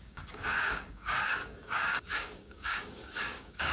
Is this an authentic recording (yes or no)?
no